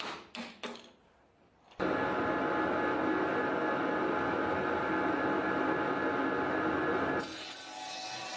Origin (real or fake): real